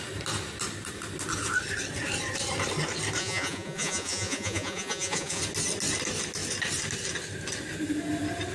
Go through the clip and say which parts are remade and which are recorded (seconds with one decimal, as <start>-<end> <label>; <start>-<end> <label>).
0.0-3.2 recorded; 3.2-5.4 remade; 5.4-8.5 recorded